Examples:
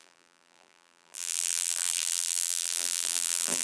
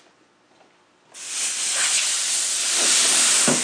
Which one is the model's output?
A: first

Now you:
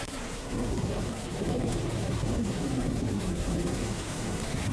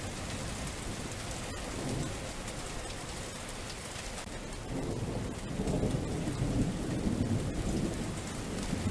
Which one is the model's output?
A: first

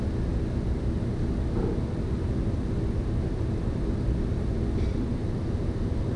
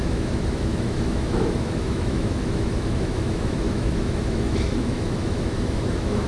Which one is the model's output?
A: second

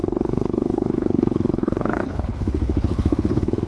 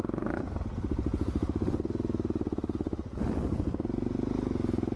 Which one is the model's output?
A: first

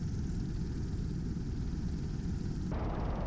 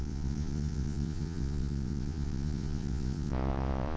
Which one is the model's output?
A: second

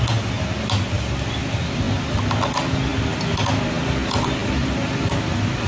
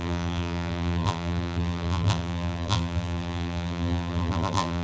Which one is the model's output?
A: second